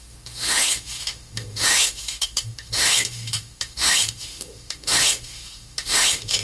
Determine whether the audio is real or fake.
fake